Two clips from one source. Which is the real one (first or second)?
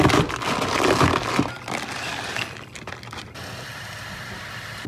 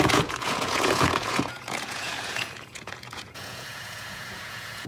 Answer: first